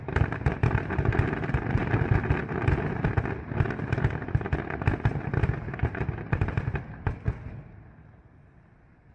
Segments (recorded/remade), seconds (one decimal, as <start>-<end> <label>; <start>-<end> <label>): 0.0-9.1 recorded